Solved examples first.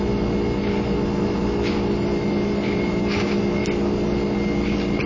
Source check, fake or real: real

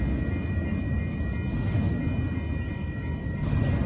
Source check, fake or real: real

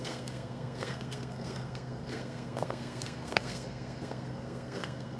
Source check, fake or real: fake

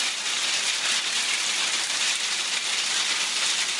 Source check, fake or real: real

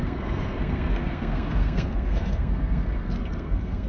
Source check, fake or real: fake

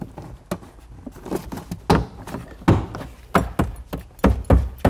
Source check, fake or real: real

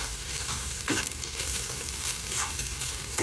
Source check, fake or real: fake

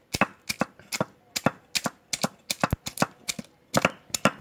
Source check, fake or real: real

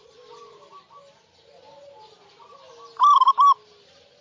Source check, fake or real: real